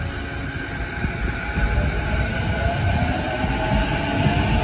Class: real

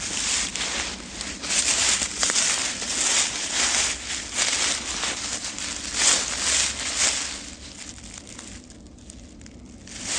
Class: real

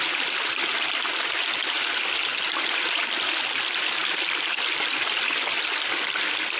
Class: real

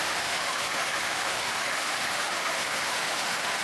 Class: fake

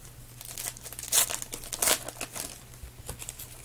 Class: real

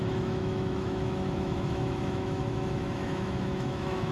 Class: fake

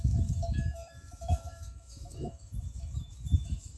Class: fake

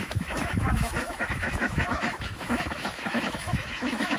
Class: fake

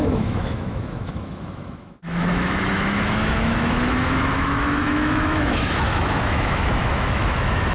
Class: fake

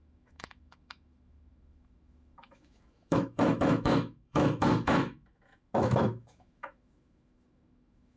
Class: fake